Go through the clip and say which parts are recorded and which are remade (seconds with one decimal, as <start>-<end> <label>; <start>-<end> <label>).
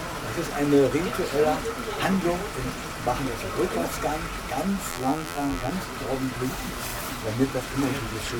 0.0-4.9 recorded; 4.9-5.7 remade; 5.7-8.4 recorded